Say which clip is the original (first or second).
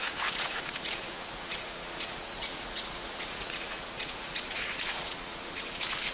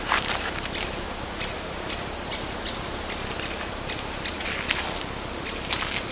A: second